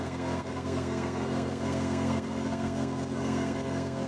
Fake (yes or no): yes